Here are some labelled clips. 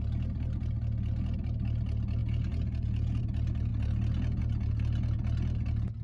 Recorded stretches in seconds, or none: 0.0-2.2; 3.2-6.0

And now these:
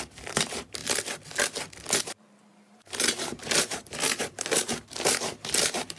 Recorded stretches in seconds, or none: 0.8-2.0

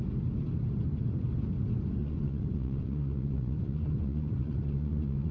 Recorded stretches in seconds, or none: 0.0-2.0

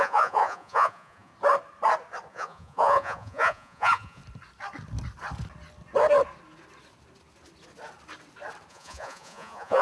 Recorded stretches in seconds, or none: 1.3-2.3; 4.2-8.7

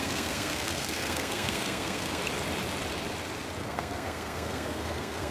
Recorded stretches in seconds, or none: 2.2-3.6

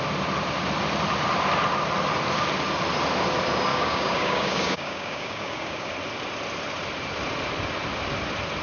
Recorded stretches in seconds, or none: 0.0-3.7; 5.9-8.6

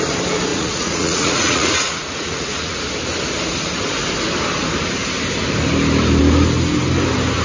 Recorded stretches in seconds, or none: 0.0-0.5; 2.8-7.4

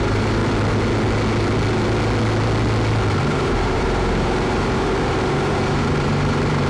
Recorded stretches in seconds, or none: 0.4-3.2